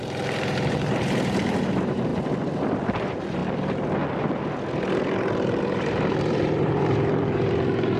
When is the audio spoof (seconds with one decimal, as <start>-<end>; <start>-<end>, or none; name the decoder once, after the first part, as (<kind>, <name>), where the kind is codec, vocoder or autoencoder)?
0.0-2.1 (vocoder, BigVGAN v2); 2.7-3.4; 5.6-8.0